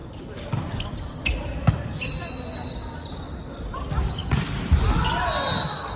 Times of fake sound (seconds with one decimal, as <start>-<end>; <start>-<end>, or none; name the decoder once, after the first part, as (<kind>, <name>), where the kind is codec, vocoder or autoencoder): none